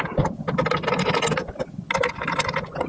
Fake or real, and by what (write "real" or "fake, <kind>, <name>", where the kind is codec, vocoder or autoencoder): real